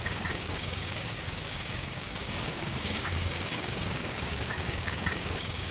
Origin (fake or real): fake